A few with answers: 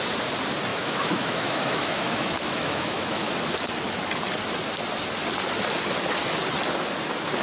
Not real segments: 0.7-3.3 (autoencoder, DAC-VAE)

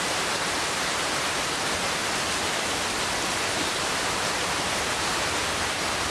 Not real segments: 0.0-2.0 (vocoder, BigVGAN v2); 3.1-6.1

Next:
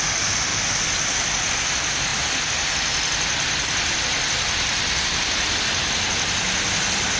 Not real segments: none

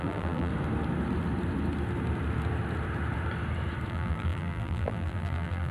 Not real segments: 0.0-0.5 (vocoder, BigVGAN v2); 3.9-5.7

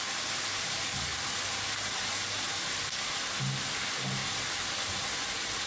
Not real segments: 1.1-3.1 (vocoder, BigVGAN v2); 4.2-4.7

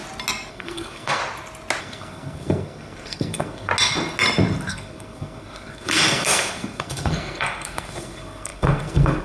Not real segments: 0.5-1.2 (codec, SNAC); 1.8-3.7; 4.7-9.2